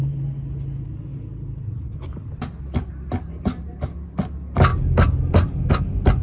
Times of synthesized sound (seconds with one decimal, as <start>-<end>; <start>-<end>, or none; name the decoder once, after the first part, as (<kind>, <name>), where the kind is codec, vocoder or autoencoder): none